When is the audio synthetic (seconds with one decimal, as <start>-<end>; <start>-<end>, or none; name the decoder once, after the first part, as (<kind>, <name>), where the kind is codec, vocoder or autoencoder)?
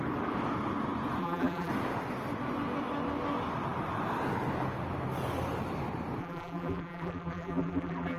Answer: 1.2-1.7 (vocoder, BigVGAN v2); 6.2-8.2